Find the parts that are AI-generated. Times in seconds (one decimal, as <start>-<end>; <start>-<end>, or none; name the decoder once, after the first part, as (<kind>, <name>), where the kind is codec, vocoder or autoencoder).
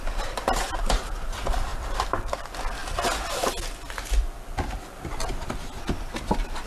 1.7-2.4 (vocoder, BigVGAN v2)